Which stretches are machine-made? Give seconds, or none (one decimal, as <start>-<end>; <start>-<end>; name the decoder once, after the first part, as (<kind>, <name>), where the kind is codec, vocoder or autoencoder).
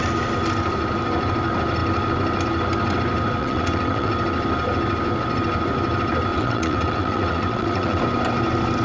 3.4-4.1 (vocoder, WaveNeXt); 6.3-8.0